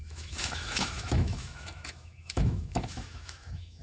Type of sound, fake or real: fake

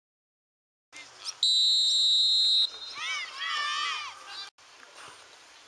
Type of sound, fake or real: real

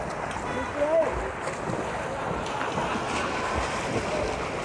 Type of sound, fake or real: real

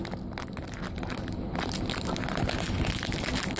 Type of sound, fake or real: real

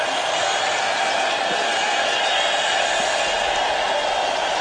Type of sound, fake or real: real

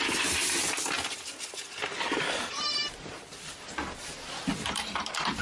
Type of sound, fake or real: real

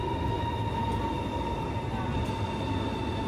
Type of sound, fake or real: real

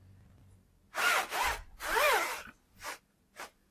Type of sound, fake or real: real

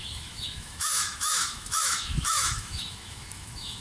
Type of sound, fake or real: fake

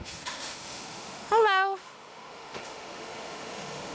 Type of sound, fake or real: fake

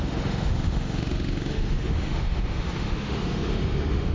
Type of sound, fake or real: fake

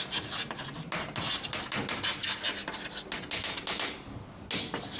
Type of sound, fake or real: real